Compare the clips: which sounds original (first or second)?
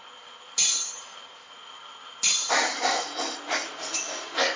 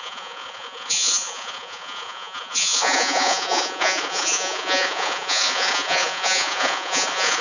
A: first